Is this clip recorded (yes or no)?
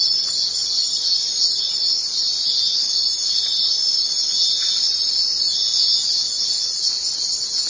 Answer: yes